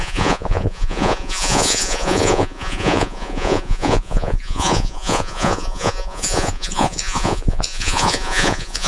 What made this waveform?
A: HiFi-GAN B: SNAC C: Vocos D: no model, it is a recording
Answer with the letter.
C